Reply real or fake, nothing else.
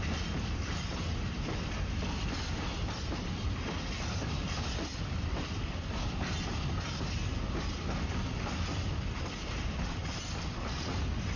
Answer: real